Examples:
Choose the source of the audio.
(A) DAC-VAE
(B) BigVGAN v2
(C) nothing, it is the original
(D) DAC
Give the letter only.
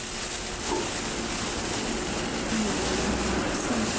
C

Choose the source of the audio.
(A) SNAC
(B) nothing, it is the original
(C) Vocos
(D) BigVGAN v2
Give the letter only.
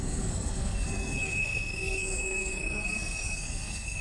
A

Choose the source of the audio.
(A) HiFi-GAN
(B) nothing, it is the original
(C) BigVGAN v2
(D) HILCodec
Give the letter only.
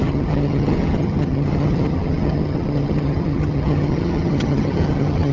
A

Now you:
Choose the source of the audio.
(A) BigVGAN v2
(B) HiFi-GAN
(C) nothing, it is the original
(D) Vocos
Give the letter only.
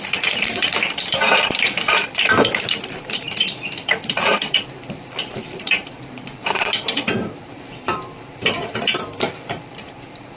A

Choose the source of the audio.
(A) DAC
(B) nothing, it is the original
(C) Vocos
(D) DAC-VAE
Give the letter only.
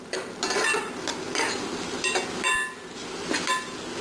B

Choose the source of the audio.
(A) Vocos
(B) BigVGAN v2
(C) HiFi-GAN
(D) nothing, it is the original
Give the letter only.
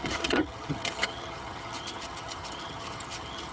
C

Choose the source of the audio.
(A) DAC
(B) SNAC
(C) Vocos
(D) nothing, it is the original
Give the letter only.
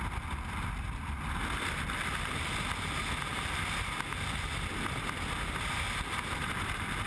D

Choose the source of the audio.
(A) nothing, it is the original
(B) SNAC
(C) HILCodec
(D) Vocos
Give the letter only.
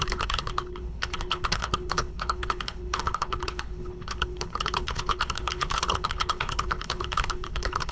C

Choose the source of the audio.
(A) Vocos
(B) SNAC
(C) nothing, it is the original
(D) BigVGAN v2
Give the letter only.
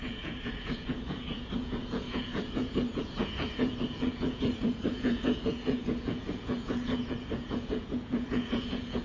A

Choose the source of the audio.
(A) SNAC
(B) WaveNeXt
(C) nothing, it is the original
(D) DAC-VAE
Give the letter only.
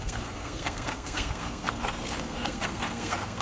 A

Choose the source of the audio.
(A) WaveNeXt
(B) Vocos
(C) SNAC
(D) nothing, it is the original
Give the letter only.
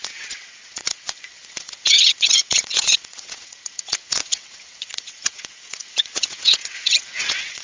A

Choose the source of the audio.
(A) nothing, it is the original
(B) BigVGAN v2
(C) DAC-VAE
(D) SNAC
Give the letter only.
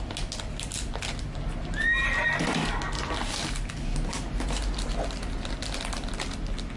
A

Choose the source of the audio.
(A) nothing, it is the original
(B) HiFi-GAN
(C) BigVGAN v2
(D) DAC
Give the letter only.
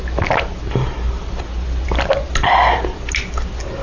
A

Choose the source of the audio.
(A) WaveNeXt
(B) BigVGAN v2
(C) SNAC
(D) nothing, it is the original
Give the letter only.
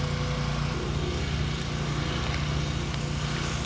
D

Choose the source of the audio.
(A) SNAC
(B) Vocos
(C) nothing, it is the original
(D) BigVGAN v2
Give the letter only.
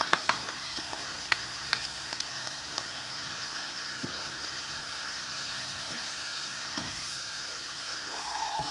A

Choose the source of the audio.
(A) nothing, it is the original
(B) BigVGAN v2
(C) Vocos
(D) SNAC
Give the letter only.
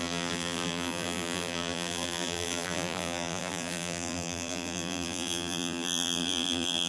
B